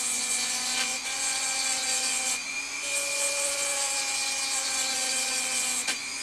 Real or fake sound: fake